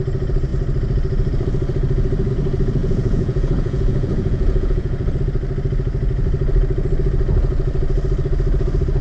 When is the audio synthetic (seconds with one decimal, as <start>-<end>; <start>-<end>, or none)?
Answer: 2.8-5.2